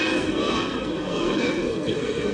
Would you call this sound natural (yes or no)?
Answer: no